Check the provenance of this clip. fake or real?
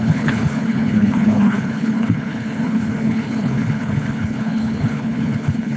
fake